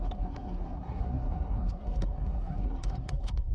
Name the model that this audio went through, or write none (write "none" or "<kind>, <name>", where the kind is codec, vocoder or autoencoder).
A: codec, SNAC